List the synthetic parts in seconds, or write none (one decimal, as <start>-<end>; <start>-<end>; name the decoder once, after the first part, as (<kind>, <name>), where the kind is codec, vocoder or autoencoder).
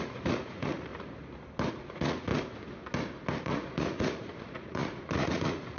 0.0-0.9 (vocoder, Vocos); 1.7-2.3; 3.4-5.8